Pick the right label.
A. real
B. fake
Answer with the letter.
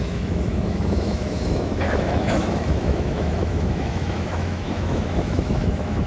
B